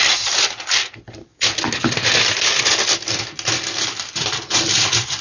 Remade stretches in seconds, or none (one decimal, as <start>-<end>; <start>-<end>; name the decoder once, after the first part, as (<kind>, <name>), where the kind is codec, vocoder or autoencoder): none